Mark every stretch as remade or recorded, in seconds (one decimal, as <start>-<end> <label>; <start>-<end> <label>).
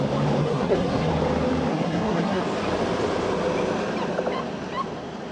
0.0-0.4 recorded; 0.4-1.1 remade; 1.1-1.7 recorded; 1.7-2.4 remade; 2.4-5.3 recorded